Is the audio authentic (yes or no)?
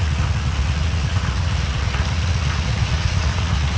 no